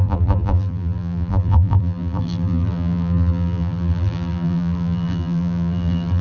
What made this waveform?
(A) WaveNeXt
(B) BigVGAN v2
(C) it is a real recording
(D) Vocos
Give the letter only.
B